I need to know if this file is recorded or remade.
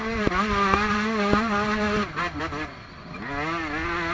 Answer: recorded